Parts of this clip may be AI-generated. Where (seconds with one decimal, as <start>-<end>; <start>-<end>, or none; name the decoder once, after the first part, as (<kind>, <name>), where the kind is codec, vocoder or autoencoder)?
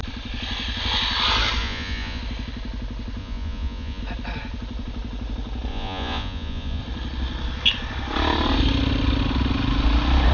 1.6-2.2 (vocoder, Vocos); 3.2-4.0; 5.7-6.8